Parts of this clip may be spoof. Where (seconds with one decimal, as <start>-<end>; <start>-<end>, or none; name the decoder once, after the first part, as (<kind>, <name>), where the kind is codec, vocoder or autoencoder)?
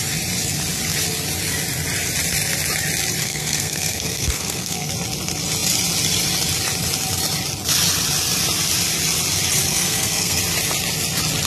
3.2-4.9 (codec, SNAC); 9.7-10.4